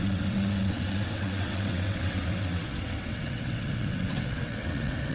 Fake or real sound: fake